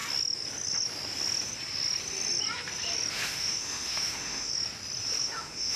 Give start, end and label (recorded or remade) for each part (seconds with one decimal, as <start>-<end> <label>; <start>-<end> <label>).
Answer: 0.0-3.1 recorded; 3.1-4.5 remade; 4.5-5.2 recorded; 5.2-5.8 remade